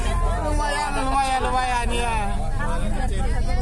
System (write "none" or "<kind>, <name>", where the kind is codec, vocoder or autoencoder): none